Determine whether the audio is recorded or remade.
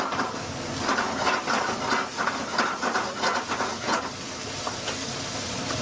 recorded